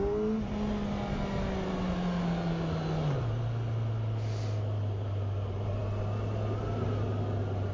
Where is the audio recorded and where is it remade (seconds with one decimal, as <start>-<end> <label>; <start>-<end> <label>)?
0.0-7.7 recorded